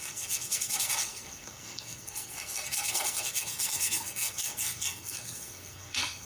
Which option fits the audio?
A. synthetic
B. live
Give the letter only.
A